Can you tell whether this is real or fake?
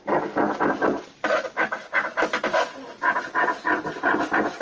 real